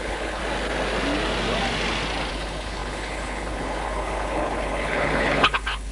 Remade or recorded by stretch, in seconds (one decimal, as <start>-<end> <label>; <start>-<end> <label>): 0.0-0.4 remade; 0.4-2.3 recorded; 2.3-5.9 remade